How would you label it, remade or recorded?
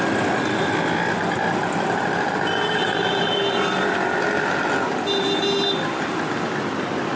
recorded